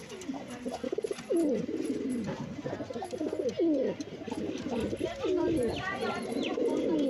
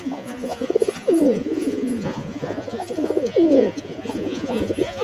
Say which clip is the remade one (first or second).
second